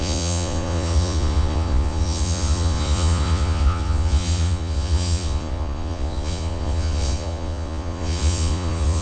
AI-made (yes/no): yes